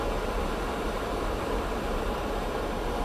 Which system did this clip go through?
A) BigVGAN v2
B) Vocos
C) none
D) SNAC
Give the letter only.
C